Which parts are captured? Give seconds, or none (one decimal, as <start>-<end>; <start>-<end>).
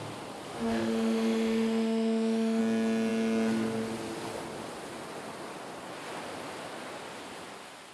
0.0-0.5; 2.6-7.9